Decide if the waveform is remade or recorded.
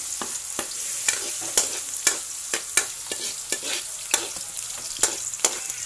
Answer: recorded